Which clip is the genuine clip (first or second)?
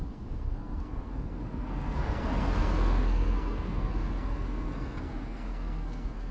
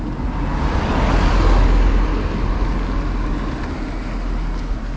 second